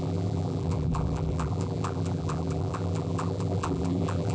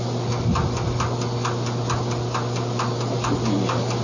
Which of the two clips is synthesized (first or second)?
first